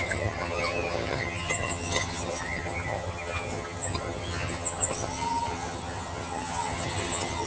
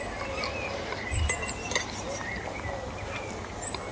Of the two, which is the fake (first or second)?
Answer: first